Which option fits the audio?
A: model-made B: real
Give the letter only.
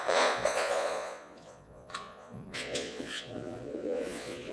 A